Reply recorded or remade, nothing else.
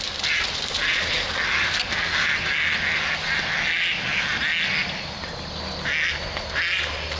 recorded